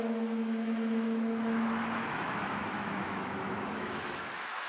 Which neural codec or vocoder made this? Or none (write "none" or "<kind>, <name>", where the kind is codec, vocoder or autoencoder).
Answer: autoencoder, DAC-VAE